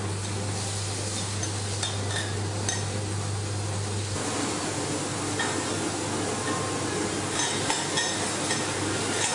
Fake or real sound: real